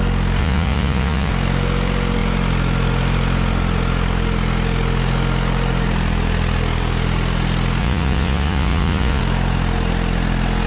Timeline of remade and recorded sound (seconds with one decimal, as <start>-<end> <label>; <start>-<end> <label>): 0.0-0.4 recorded; 0.4-1.3 remade; 1.3-7.8 recorded; 7.8-9.2 remade; 9.2-10.7 recorded